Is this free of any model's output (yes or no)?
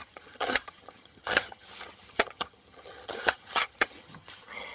no